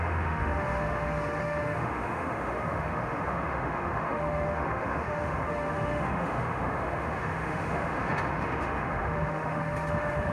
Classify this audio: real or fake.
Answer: fake